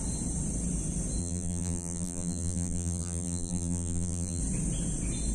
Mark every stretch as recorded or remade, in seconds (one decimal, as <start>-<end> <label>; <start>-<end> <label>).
0.0-1.2 recorded; 1.2-4.4 remade; 4.4-5.3 recorded